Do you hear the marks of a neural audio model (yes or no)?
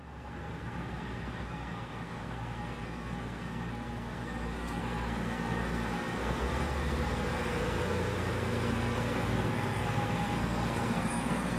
yes